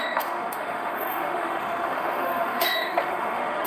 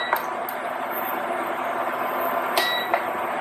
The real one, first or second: second